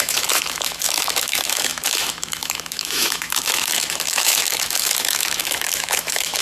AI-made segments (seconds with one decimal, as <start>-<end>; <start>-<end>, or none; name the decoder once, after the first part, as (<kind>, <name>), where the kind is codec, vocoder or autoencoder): 0.0-6.4 (autoencoder, DAC-VAE)